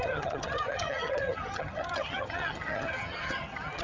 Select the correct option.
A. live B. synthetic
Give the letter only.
B